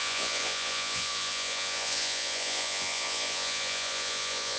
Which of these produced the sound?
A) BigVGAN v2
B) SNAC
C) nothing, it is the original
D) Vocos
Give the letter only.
D